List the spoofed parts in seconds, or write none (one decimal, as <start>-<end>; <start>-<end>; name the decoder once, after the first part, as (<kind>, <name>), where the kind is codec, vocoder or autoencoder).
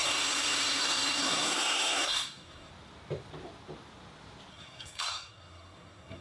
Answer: 0.0-2.7 (codec, SNAC); 4.5-6.2